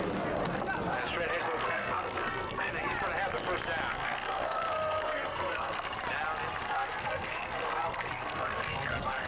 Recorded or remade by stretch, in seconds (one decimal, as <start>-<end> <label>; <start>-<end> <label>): 0.0-1.4 recorded; 1.4-2.7 remade; 2.7-3.9 recorded; 3.9-5.9 remade; 5.9-6.6 recorded; 6.6-9.3 remade